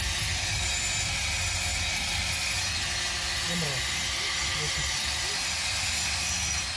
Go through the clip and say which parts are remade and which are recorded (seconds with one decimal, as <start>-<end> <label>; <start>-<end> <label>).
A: 0.0-6.8 recorded